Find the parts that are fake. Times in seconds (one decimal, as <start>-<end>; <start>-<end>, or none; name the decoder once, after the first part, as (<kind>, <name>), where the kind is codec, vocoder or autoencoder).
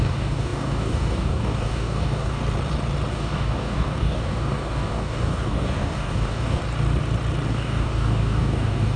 0.0-2.4 (codec, DAC); 3.1-6.6; 7.5-9.0